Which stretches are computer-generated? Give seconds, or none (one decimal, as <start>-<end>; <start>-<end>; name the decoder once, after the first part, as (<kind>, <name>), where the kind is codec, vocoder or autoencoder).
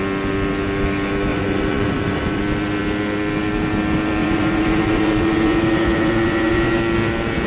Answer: 1.3-2.4 (vocoder, Vocos); 4.2-6.8